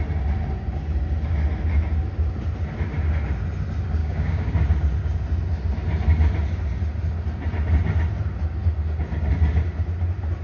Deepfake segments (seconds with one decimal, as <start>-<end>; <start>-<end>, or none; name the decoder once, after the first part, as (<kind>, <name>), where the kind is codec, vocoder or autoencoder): 4.0-4.5 (codec, DAC)